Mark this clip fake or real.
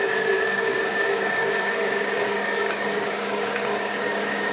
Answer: fake